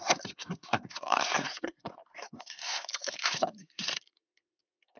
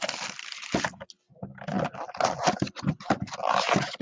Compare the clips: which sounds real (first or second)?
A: second